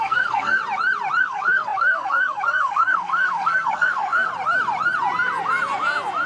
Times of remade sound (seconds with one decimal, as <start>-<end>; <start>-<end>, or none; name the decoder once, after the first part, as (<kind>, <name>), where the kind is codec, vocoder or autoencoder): 0.0-0.6 (codec, SNAC); 1.2-4.3